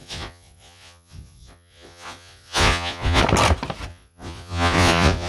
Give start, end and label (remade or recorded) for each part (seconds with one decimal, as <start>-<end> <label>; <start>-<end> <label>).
0.0-3.2 remade; 3.2-3.9 recorded; 3.9-5.3 remade